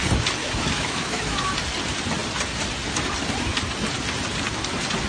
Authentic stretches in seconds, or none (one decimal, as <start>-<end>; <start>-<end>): 0.0-0.4; 1.5-5.1